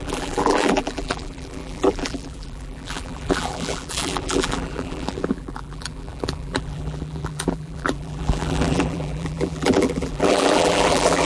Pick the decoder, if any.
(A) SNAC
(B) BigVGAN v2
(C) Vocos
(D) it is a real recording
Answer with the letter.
B